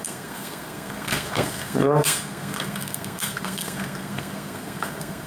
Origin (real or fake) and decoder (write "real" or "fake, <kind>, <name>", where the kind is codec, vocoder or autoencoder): fake, codec, SNAC